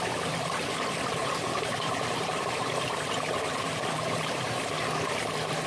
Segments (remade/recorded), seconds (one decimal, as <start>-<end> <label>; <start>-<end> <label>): 0.0-1.2 recorded; 1.2-4.6 remade; 4.6-5.7 recorded